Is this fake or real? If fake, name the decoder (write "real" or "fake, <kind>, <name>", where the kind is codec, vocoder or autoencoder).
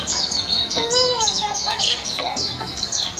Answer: fake, codec, SNAC